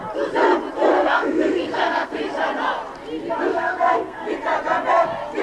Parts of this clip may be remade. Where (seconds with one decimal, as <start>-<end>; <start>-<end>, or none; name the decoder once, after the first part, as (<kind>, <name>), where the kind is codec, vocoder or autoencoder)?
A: 0.9-2.2 (codec, SNAC); 3.5-4.3